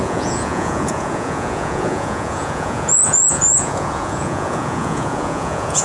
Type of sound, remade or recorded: remade